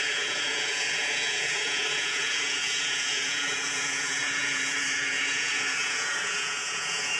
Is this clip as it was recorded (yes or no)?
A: no